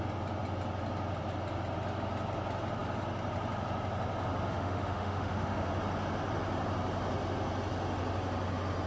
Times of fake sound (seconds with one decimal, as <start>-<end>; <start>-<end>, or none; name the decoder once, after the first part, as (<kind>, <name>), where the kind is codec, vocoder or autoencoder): 4.5-5.7 (autoencoder, DAC-VAE)